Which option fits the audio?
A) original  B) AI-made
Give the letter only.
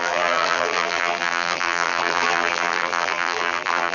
B